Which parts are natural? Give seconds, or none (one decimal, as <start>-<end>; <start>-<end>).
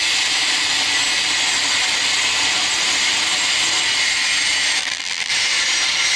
0.0-4.8; 5.3-6.2